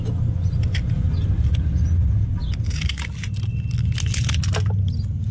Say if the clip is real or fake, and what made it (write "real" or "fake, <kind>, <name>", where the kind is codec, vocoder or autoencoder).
real